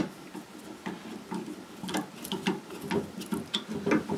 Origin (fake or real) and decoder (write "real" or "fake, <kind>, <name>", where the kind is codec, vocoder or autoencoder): real